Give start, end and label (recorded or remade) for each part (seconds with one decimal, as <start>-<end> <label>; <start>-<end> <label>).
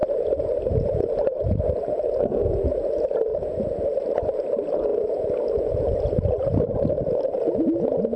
0.0-1.6 remade; 1.6-8.2 recorded